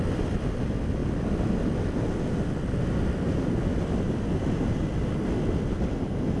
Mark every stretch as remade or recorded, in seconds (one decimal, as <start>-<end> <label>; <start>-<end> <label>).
0.0-1.0 recorded; 1.0-4.8 remade; 4.8-6.4 recorded

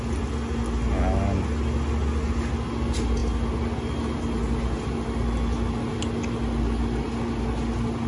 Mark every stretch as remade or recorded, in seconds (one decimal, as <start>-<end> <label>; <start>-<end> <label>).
0.0-8.1 recorded

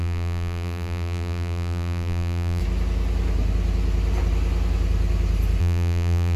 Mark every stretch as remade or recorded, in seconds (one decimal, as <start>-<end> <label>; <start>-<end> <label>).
0.0-2.6 remade; 2.6-5.6 recorded; 5.6-6.4 remade